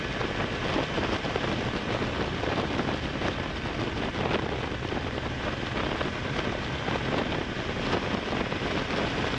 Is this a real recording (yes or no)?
no